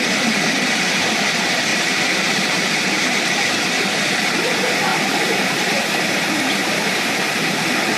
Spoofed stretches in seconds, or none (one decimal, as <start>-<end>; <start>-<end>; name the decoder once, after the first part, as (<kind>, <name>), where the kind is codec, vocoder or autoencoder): 1.7-3.2 (vocoder, BigVGAN v2); 4.9-7.3